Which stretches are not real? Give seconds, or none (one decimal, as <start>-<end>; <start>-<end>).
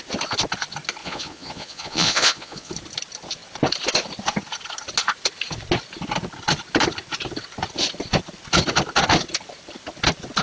1.0-2.7